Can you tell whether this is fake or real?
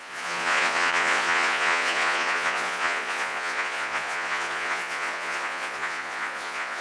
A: fake